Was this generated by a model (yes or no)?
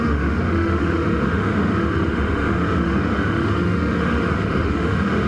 yes